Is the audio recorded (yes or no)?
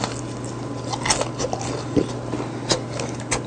yes